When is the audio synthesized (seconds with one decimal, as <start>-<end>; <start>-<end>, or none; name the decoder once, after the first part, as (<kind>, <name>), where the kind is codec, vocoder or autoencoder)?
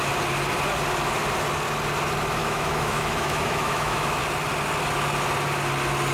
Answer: 2.4-4.2 (autoencoder, DAC-VAE)